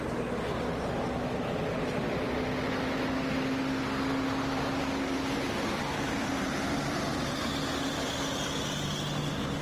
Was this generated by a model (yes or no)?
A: no